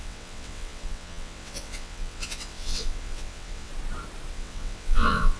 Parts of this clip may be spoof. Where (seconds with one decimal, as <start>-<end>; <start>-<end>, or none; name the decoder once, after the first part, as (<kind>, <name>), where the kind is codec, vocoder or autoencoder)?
0.0-3.7 (vocoder, WaveNeXt); 4.3-5.4